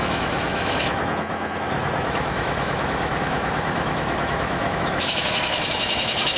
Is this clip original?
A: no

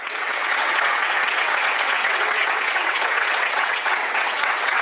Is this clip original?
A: no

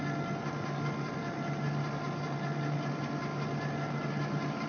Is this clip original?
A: yes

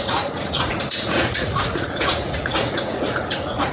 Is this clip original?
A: no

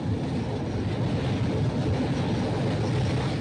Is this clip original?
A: yes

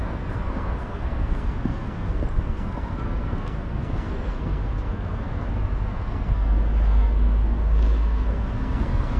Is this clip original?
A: no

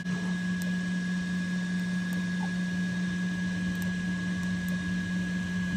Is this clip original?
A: yes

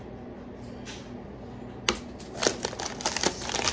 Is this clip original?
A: yes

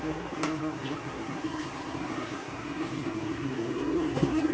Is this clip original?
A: no